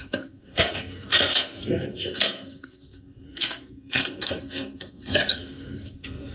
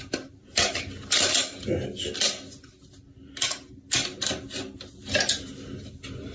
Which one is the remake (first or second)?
first